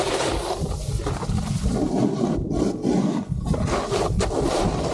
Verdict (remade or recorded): recorded